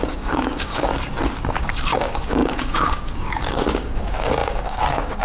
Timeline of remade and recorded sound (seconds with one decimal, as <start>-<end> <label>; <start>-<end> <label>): 0.0-0.9 remade; 0.9-1.6 recorded; 1.6-5.2 remade